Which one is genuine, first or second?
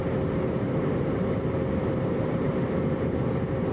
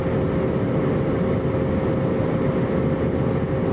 second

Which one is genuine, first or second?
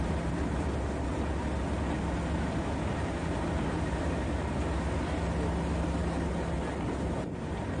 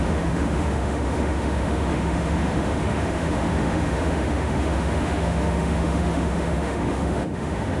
first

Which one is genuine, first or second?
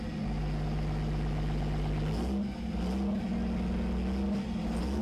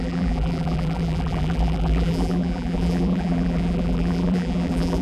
first